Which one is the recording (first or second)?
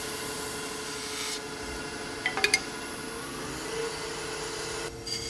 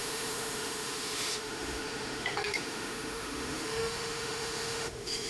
first